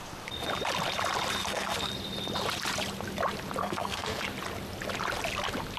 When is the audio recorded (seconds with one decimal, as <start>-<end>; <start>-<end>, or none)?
0.0-1.4; 1.9-3.6; 4.2-5.8